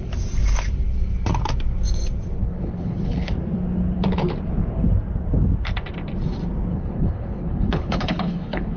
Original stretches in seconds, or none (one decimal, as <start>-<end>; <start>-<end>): 0.0-2.4; 3.3-6.7